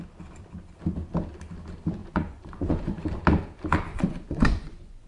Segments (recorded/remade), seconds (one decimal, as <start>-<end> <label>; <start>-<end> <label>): 0.0-2.0 recorded; 2.0-3.0 remade; 3.0-3.9 recorded; 3.9-5.1 remade